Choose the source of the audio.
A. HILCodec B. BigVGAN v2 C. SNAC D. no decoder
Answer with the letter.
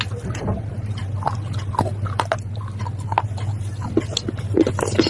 D